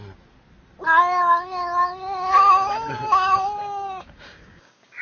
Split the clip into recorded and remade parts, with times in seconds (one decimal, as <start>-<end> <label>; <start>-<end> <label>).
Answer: 0.0-3.6 recorded; 3.6-5.0 remade